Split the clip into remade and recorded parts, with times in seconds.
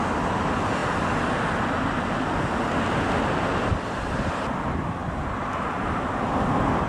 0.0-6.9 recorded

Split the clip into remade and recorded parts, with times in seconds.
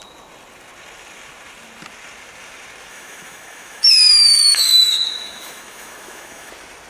0.0-2.9 recorded; 2.9-6.5 remade; 6.5-6.9 recorded